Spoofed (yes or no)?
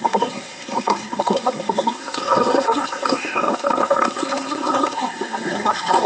yes